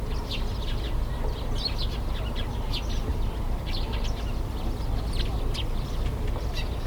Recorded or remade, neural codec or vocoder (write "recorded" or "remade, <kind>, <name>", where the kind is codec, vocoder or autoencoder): recorded